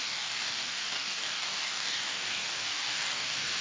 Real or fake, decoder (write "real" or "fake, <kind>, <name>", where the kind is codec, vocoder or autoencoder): fake, codec, DAC